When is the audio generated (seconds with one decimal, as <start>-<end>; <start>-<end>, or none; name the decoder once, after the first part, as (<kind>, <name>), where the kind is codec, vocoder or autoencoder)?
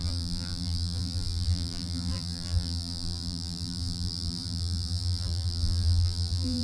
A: 0.0-6.6 (vocoder, BigVGAN v2)